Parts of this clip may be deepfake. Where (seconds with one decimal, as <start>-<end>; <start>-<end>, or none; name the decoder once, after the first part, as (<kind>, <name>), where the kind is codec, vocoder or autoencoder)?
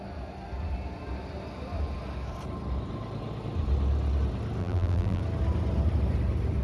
4.6-5.2 (vocoder, BigVGAN v2)